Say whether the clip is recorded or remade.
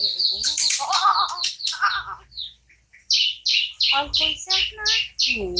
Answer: recorded